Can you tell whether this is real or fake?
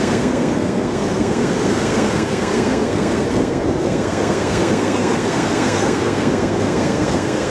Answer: fake